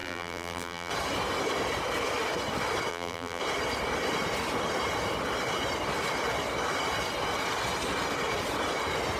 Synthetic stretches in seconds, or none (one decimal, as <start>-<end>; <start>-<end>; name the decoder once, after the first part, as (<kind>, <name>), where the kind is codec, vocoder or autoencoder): 0.0-0.9 (vocoder, BigVGAN v2); 2.9-3.4